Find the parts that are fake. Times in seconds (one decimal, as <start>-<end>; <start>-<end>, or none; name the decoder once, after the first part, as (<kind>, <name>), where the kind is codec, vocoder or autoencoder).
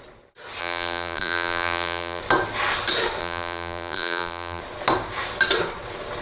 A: 0.6-2.2 (vocoder, BigVGAN v2); 3.2-4.6